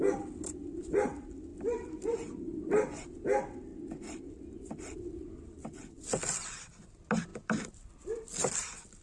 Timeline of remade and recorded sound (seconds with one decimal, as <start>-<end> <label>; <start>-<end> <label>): 0.0-1.5 recorded; 1.5-3.1 remade; 3.1-7.3 recorded; 7.3-8.5 remade; 8.5-9.0 recorded